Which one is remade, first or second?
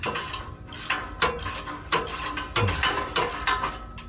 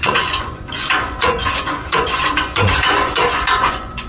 second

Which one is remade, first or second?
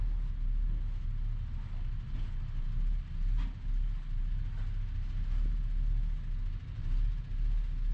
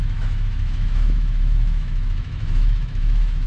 second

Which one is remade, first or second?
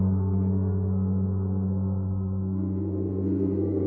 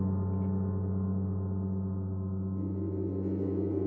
first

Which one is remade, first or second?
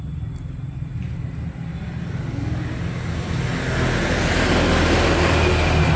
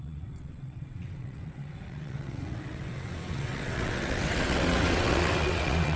second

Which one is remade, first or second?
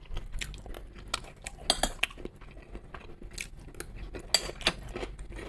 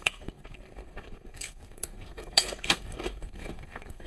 second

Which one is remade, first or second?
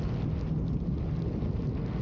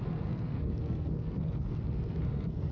second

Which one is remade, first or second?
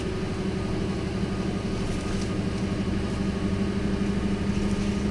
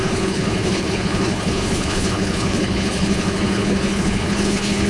second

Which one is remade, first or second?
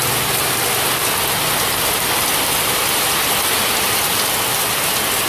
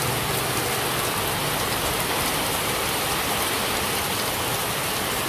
second